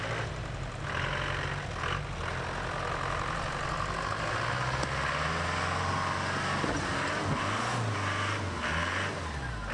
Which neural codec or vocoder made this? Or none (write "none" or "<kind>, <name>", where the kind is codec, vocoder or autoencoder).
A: none